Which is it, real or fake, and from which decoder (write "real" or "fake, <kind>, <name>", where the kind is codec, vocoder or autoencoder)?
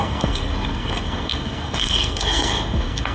fake, codec, SNAC